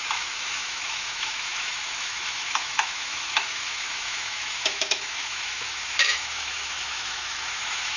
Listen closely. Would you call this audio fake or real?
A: fake